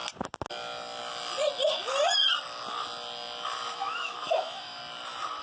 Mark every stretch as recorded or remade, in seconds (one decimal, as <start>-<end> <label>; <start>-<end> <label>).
0.0-3.7 recorded; 3.7-4.8 remade; 4.8-5.4 recorded